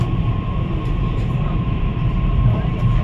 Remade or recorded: remade